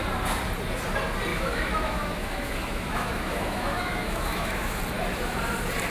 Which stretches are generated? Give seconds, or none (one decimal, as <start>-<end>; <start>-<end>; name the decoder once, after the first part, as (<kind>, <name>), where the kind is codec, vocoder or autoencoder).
1.3-4.8 (autoencoder, DAC-VAE)